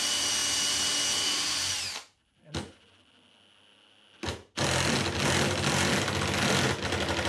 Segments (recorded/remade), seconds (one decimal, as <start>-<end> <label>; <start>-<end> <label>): 0.0-7.3 recorded